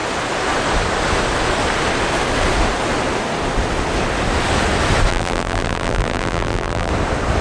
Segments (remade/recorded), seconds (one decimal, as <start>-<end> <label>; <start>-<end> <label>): 0.0-5.1 recorded; 5.1-6.9 remade; 6.9-7.4 recorded